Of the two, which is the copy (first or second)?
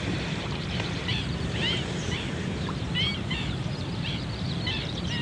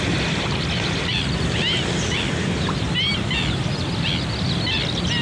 first